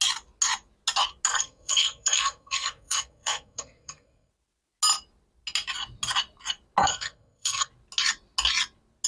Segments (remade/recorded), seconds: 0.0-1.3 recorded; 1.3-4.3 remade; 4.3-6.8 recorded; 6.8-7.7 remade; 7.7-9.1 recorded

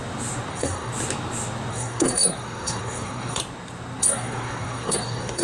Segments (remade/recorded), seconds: 0.0-0.5 recorded; 0.5-0.9 remade; 0.9-1.7 recorded; 1.7-3.4 remade; 3.4-4.0 recorded; 4.0-5.4 remade